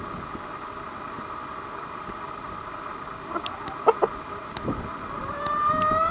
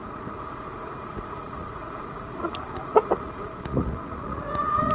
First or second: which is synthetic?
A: second